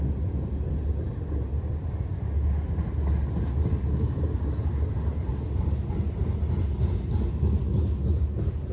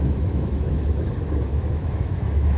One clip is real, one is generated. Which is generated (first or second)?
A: second